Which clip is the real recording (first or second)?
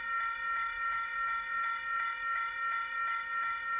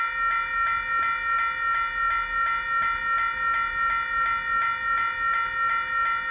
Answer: second